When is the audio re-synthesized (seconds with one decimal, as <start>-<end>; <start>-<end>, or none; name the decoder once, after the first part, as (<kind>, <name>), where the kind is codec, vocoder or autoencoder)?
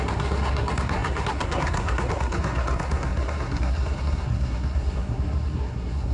0.0-6.1 (codec, SNAC)